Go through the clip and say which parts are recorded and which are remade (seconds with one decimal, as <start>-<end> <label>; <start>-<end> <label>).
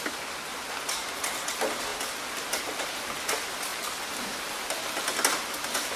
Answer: 0.0-6.0 recorded